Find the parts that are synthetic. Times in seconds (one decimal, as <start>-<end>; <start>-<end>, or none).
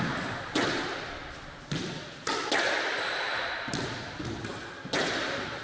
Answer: none